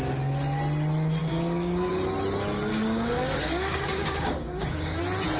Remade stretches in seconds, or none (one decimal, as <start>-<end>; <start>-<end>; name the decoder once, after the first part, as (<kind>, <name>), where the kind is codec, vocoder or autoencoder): 1.2-1.9 (codec, DAC); 2.7-5.0